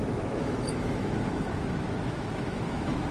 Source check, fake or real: fake